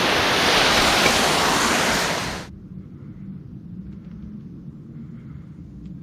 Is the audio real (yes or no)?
yes